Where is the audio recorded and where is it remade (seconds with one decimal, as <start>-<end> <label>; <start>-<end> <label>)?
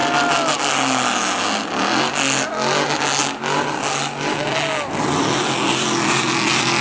0.0-6.8 recorded